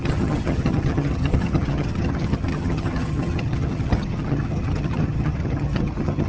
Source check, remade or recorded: remade